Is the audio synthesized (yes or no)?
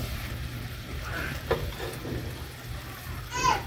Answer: yes